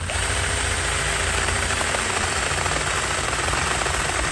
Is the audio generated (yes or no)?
yes